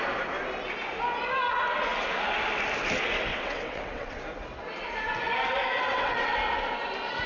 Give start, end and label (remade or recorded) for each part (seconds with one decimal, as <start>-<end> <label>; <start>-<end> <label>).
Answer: 0.0-3.3 recorded; 3.3-4.2 remade; 4.2-5.9 recorded; 5.9-6.4 remade; 6.4-7.3 recorded